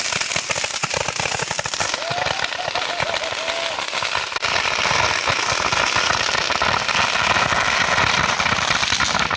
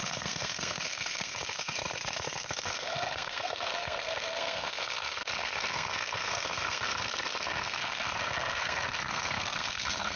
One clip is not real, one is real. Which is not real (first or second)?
second